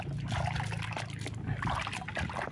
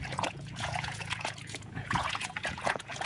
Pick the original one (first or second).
first